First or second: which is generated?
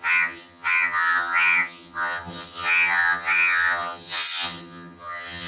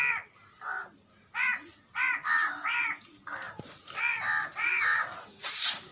first